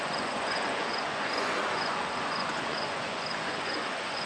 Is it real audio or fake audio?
fake